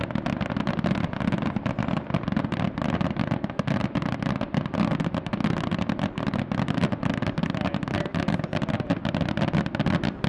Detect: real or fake real